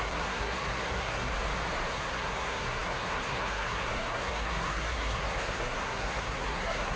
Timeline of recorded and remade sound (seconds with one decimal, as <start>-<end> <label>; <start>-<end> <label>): 0.0-1.3 remade; 1.3-1.9 recorded; 1.9-7.0 remade